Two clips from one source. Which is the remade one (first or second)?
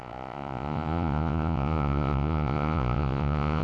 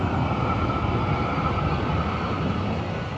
first